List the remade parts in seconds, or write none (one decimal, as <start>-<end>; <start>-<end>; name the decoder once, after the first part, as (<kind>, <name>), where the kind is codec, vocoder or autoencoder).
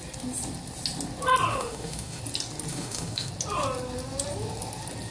1.5-2.2 (autoencoder, DAC-VAE); 2.7-3.3